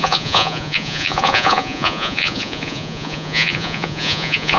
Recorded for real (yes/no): no